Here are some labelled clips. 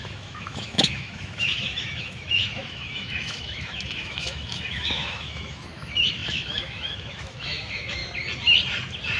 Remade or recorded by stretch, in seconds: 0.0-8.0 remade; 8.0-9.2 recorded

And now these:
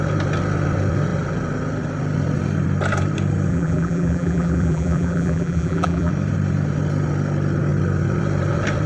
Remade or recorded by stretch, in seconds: 0.0-3.5 recorded; 3.5-6.1 remade; 6.1-8.9 recorded

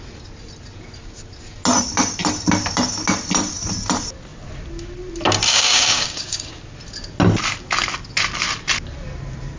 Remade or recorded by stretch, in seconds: 0.0-5.5 recorded; 5.5-6.6 remade; 6.6-9.6 recorded

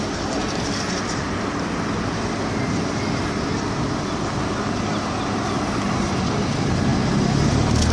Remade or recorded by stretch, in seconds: 0.0-7.9 recorded

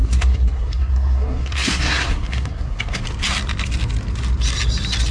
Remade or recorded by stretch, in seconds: 0.0-3.0 remade; 3.0-5.1 recorded

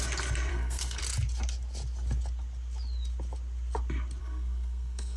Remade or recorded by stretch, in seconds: 0.0-0.5 recorded; 0.5-1.0 remade; 1.0-4.2 recorded; 4.2-5.2 remade

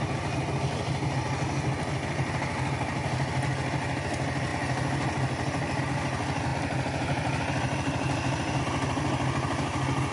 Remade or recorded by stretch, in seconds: 0.0-10.1 recorded

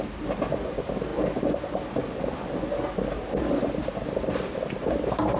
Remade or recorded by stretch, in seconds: 0.0-5.4 recorded